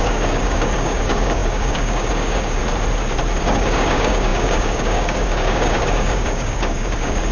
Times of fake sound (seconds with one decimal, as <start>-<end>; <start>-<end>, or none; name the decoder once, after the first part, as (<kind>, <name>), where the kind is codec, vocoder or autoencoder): 0.0-2.6 (codec, DAC); 3.4-7.3